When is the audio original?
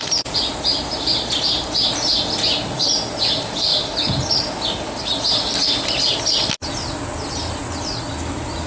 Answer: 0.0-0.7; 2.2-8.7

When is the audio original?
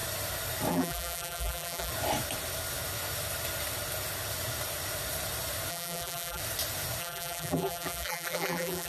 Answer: 0.0-0.7; 1.9-5.7; 6.4-7.0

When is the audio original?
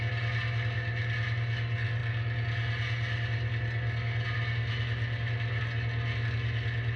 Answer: 0.0-7.0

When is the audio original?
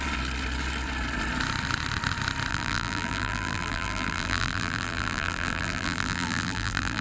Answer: 0.0-2.5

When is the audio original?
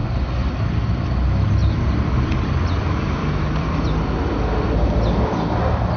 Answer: 0.0-1.6; 5.2-6.0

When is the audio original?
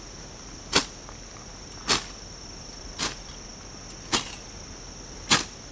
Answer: 0.0-5.7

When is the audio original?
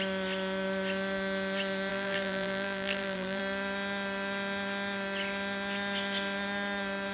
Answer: 0.0-1.9; 3.4-7.1